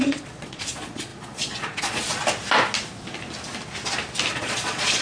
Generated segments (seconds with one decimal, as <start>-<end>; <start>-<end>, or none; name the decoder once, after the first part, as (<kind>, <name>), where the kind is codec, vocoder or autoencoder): 0.0-2.2 (vocoder, Vocos); 4.3-5.0